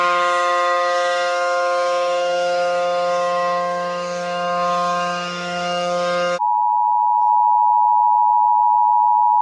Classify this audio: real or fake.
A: fake